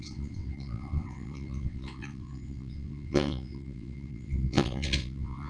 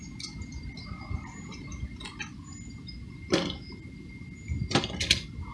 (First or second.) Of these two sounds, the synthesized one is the first